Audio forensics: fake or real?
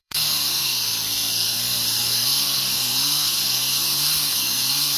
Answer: fake